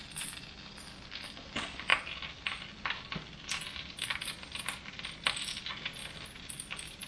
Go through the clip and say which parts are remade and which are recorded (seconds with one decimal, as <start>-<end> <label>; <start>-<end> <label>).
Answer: 0.0-7.1 recorded